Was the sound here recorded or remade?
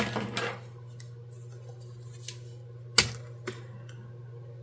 recorded